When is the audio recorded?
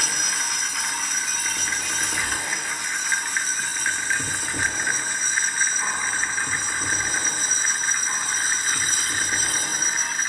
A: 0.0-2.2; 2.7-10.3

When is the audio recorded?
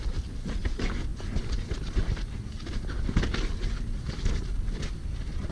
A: 0.0-5.5